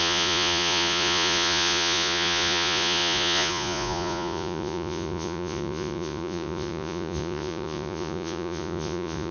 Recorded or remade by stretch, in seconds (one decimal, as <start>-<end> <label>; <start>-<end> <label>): 0.0-9.3 remade